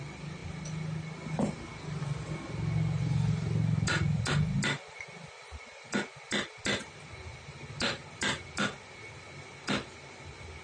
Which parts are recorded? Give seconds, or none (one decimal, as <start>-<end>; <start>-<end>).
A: 0.0-10.6